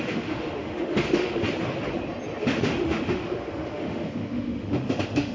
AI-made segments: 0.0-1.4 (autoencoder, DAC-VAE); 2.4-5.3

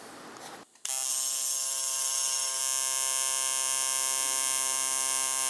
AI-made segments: 1.1-2.6 (autoencoder, DAC-VAE)

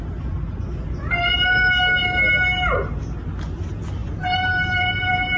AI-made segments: 2.0-3.1 (vocoder, BigVGAN v2); 4.0-5.4

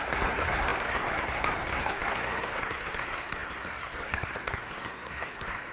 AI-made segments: 0.0-5.7 (codec, SNAC)

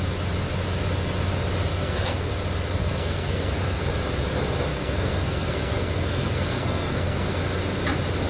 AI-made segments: 1.7-2.3 (codec, SNAC); 2.8-3.9; 4.7-7.4